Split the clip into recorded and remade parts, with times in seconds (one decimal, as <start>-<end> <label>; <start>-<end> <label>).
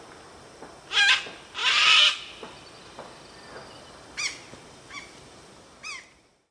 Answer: 0.0-6.5 recorded